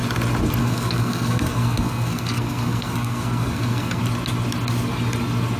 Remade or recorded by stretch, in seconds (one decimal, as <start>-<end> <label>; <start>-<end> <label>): 0.0-0.6 recorded; 0.6-4.0 remade; 4.0-5.6 recorded